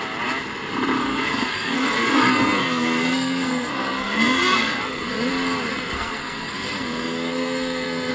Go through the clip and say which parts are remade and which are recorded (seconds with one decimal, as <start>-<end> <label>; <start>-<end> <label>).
0.0-1.0 recorded; 1.0-5.3 remade; 5.3-5.7 recorded; 5.7-8.1 remade